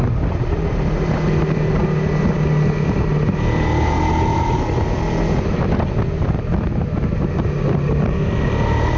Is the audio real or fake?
real